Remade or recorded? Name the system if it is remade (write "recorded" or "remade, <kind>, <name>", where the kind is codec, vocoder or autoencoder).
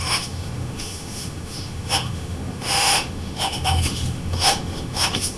remade, autoencoder, DAC-VAE